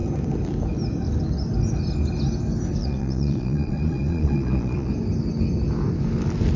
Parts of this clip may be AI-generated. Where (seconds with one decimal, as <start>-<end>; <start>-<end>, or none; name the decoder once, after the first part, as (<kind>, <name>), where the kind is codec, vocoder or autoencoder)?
2.8-4.9 (vocoder, Vocos)